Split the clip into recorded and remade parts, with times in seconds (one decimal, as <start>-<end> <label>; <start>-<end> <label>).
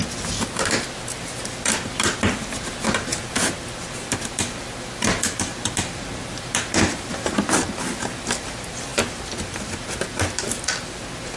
0.0-11.4 recorded